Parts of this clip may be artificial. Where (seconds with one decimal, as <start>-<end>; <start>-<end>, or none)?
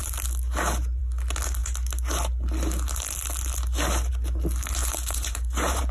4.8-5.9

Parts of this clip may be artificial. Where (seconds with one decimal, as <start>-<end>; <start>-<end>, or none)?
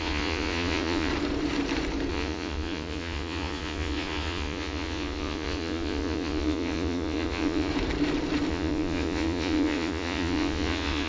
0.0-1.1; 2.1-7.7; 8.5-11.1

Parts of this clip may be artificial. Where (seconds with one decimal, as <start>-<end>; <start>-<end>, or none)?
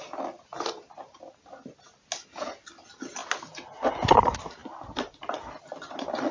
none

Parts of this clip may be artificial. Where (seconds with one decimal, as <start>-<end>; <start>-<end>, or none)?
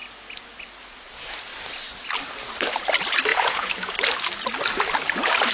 3.3-3.9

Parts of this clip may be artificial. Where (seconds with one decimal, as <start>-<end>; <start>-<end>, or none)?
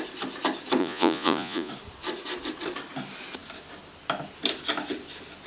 0.8-1.7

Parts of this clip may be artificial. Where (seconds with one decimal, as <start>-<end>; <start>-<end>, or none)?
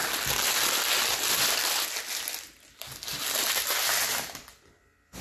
none